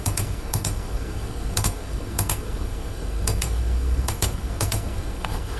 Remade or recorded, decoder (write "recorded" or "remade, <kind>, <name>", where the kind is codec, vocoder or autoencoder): remade, codec, SNAC